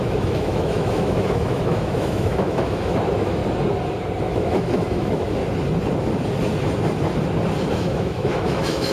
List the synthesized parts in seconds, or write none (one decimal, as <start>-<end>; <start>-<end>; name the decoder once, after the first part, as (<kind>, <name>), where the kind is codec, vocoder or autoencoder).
0.0-3.4 (autoencoder, DAC-VAE); 4.2-5.4; 7.7-8.9